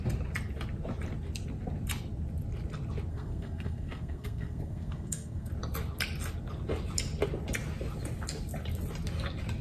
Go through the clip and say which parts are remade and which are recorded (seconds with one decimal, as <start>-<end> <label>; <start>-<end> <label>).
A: 0.0-3.1 recorded; 3.1-5.5 remade; 5.5-9.6 recorded